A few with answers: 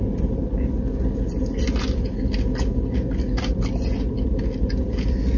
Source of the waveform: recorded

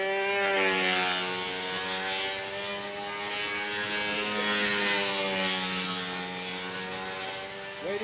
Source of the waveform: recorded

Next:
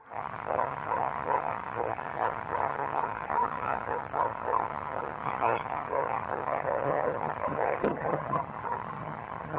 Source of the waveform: remade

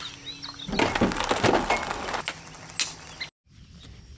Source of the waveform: recorded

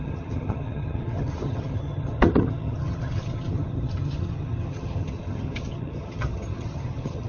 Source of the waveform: remade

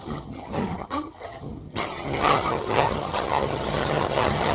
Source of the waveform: remade